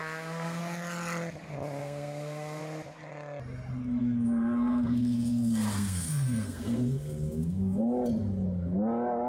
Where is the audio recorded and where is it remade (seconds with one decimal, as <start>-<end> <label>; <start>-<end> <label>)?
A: 0.0-0.6 remade; 0.6-1.8 recorded; 1.8-2.6 remade; 2.6-4.0 recorded; 4.0-7.8 remade; 7.8-9.3 recorded